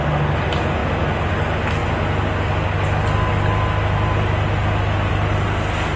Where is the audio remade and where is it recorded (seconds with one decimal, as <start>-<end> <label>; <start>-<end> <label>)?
0.0-6.0 recorded